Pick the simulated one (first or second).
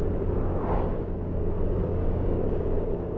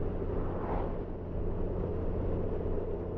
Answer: first